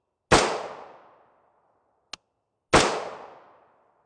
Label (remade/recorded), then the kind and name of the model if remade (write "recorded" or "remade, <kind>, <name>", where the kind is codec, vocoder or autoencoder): recorded